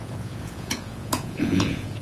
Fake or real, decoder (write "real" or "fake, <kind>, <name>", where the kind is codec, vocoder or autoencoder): fake, vocoder, Vocos